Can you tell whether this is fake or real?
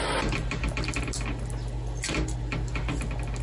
real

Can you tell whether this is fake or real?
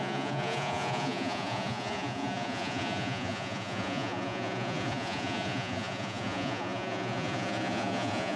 fake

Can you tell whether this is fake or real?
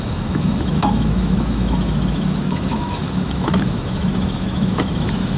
fake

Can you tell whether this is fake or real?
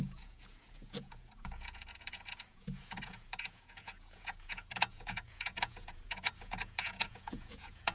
fake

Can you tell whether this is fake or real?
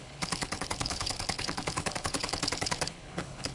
fake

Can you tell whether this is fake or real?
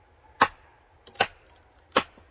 real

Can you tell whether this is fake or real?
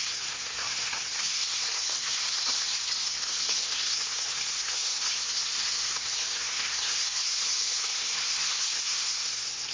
fake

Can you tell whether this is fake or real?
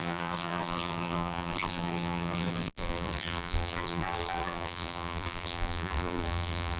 fake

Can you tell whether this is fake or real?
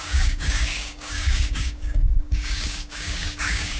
fake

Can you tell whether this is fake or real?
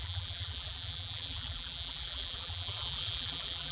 fake